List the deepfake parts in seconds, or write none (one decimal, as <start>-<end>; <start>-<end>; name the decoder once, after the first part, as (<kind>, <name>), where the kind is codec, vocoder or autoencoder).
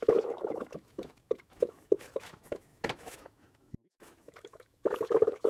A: 0.0-5.5 (autoencoder, DAC-VAE)